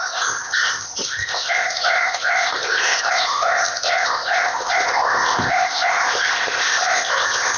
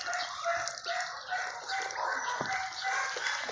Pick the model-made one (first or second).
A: first